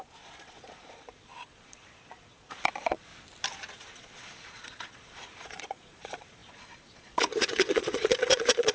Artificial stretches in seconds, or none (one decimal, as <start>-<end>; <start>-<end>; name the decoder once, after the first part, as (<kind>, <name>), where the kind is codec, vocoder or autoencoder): 0.0-3.1 (vocoder, Vocos); 3.7-8.7